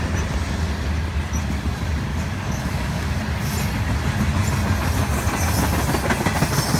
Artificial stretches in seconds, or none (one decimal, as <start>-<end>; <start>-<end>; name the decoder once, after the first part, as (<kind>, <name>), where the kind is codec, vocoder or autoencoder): 2.1-3.2 (codec, DAC)